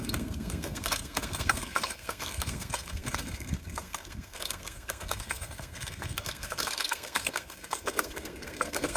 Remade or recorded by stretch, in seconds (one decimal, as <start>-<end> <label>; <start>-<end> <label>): 0.0-9.0 remade